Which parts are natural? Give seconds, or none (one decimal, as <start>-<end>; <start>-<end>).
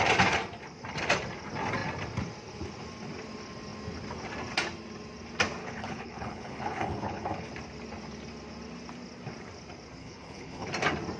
0.0-5.6; 7.5-10.0; 10.7-11.2